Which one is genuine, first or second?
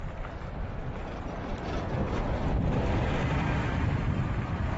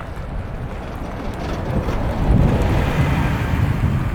second